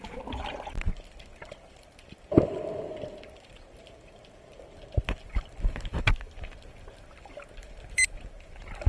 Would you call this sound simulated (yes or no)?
yes